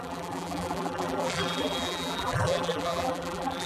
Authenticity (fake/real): fake